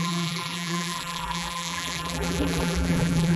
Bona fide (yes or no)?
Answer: no